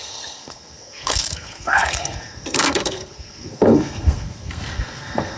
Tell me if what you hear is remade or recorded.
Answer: remade